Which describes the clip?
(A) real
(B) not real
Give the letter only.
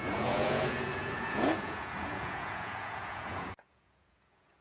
B